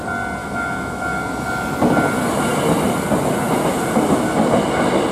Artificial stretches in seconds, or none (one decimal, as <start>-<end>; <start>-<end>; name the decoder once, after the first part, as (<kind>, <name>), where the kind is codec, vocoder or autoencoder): 0.4-1.2 (autoencoder, DAC-VAE)